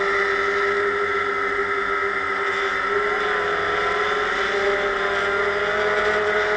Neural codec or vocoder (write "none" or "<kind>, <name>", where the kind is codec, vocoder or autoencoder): none